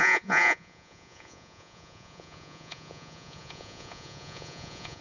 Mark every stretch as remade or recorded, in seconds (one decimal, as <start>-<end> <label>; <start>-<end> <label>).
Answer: 0.0-5.0 remade